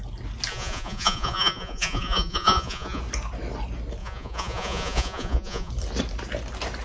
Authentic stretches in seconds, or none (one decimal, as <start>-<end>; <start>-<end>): 0.0-0.5; 3.0-4.0; 5.7-6.8